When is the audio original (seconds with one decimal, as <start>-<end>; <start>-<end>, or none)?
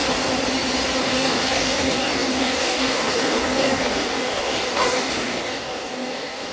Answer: 0.0-1.0